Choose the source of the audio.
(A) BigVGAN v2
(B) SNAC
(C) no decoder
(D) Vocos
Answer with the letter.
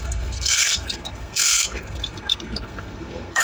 B